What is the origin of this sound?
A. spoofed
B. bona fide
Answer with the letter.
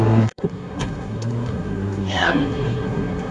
A